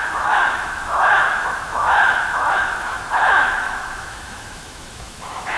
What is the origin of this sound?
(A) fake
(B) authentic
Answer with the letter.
A